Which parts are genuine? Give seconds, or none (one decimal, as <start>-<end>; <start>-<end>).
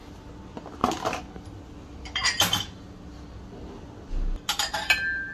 0.0-5.3